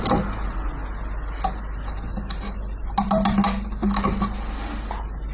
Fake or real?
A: real